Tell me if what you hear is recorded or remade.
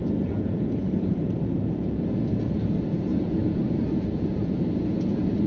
remade